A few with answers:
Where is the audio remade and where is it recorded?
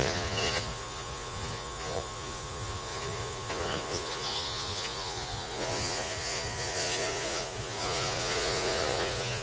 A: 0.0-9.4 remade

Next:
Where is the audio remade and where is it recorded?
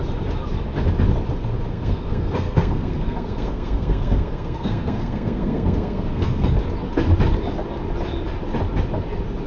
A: 0.0-1.7 recorded; 1.7-6.5 remade; 6.5-9.5 recorded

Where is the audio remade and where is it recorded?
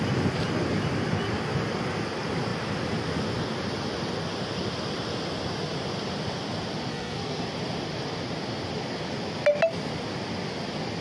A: 0.0-6.9 recorded; 6.9-7.5 remade; 7.5-11.0 recorded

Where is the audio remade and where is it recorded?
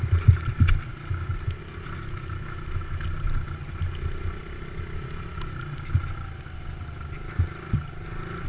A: 0.0-0.9 recorded; 0.9-1.6 remade; 1.6-8.5 recorded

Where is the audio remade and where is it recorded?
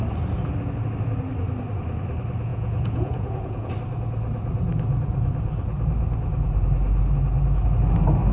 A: 0.0-2.5 recorded; 2.5-3.7 remade; 3.7-8.3 recorded